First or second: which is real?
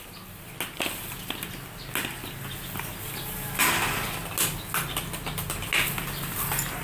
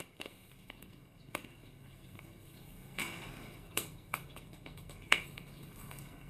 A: first